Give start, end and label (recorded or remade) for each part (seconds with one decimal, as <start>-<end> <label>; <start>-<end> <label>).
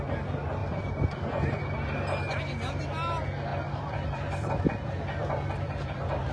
0.0-0.6 recorded; 0.6-1.6 remade; 1.6-3.5 recorded; 3.5-4.5 remade; 4.5-5.2 recorded; 5.2-6.3 remade